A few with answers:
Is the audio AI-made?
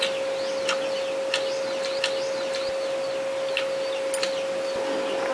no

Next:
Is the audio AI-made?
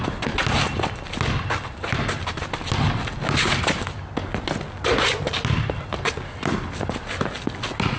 no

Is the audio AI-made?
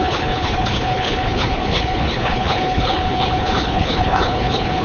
yes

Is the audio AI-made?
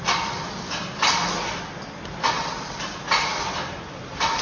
no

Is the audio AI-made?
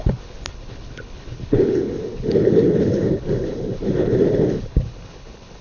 yes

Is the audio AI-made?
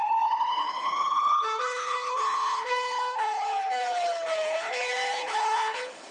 yes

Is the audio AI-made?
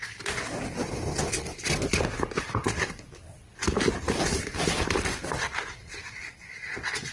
no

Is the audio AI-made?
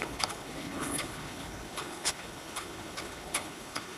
yes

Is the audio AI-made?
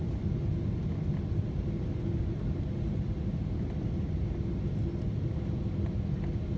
no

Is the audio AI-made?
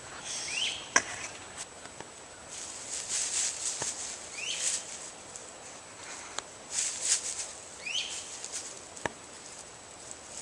no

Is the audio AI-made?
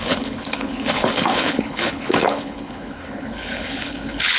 yes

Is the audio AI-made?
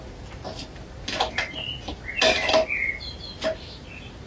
no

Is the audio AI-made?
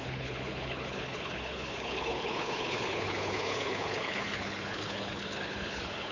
yes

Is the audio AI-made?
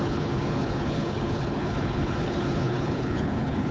yes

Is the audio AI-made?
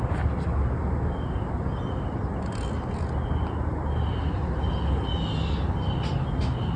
no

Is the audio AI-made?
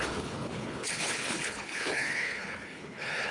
yes